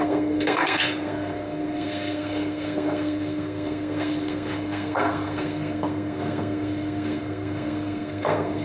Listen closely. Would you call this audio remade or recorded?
remade